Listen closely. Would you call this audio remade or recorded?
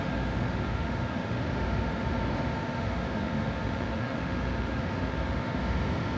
remade